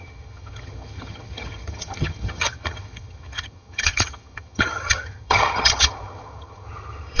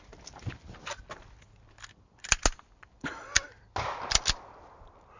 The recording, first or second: second